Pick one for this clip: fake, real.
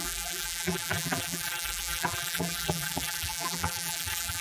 fake